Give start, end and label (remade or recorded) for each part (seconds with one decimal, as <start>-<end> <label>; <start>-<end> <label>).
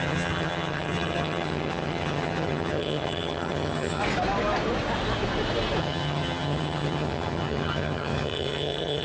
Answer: 0.0-4.0 remade; 4.0-5.8 recorded; 5.8-9.0 remade